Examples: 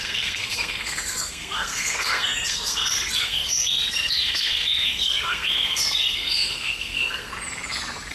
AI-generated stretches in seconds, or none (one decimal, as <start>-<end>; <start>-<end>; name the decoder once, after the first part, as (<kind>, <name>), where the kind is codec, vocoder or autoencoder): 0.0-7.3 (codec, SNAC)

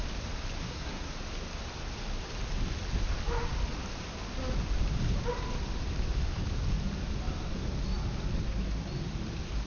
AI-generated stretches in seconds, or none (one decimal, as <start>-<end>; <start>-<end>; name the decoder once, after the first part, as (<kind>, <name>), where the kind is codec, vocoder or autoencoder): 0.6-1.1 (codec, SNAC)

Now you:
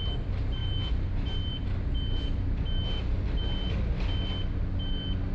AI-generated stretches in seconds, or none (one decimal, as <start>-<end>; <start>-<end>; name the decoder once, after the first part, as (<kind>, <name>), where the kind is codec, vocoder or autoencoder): none